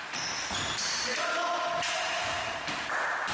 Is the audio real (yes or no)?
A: yes